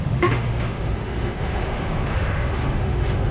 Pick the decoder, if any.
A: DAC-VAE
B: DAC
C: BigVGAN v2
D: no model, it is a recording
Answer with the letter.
A